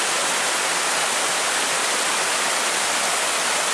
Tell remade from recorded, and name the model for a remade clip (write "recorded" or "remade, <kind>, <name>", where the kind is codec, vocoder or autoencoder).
recorded